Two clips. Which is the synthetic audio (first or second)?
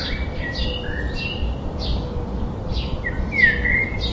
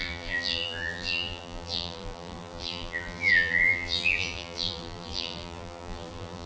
second